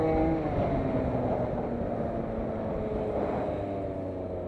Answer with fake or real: real